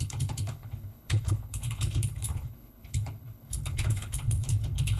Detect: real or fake fake